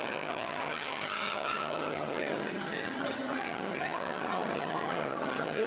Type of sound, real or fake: fake